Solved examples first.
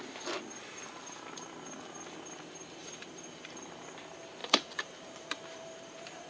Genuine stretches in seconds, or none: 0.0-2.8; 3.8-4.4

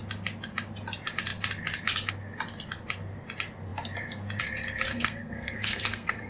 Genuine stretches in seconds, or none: 0.0-4.9

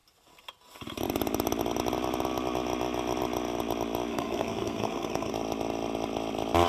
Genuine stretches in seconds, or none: 0.0-4.1; 5.3-6.7

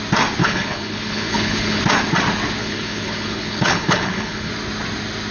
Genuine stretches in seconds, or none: 0.0-0.4; 1.8-2.6; 4.5-5.3

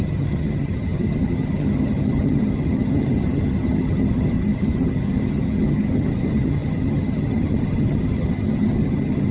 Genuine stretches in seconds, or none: none

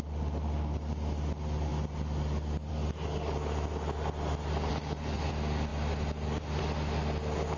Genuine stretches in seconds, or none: 0.0-4.7; 5.3-7.6